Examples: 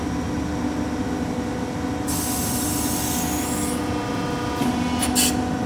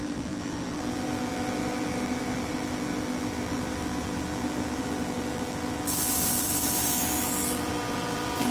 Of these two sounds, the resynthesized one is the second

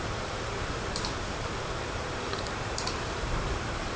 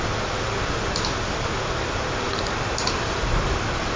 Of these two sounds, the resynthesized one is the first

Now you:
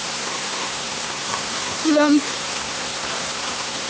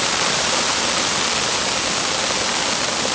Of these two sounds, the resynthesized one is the first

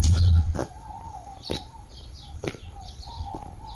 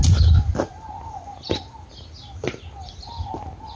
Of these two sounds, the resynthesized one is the first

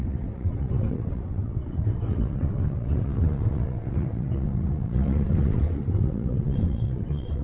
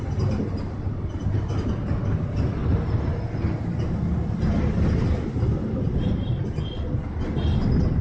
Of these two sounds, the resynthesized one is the first